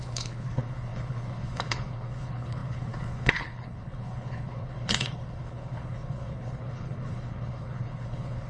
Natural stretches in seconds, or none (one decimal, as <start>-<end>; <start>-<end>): none